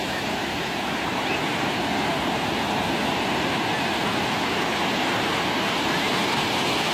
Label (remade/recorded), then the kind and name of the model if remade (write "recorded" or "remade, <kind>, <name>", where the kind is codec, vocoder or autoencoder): recorded